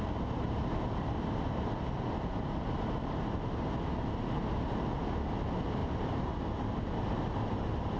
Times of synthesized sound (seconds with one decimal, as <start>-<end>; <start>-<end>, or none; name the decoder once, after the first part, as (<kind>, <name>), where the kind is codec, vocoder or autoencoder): none